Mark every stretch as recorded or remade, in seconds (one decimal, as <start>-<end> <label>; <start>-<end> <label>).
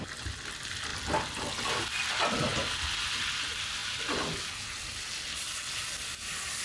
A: 0.0-6.6 recorded